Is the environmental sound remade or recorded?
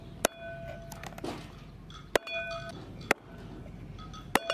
recorded